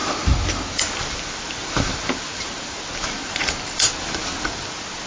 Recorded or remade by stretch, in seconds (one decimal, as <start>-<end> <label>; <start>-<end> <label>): 0.0-0.8 remade; 0.8-1.6 recorded; 1.6-3.9 remade; 3.9-5.1 recorded